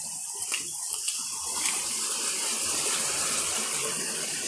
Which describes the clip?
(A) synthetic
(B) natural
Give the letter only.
B